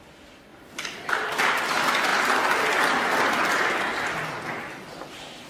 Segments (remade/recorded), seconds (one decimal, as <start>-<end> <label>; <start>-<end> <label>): 0.0-0.5 remade; 0.5-1.1 recorded; 1.1-2.1 remade; 2.1-4.8 recorded; 4.8-5.5 remade